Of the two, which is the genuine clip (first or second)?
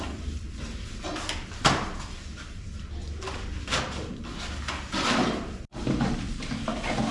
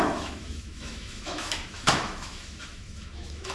first